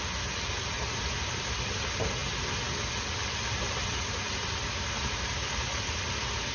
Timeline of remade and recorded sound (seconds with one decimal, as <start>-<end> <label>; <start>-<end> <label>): 0.0-6.5 recorded